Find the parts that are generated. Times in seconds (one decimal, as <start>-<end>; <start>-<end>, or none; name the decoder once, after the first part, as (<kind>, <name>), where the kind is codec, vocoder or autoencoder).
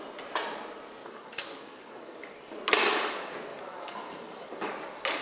1.0-2.3 (codec, DAC); 3.5-4.7